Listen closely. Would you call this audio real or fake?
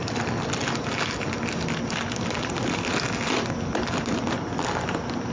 real